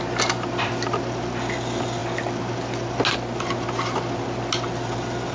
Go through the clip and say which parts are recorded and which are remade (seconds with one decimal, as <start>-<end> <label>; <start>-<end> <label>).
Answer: 0.0-5.3 recorded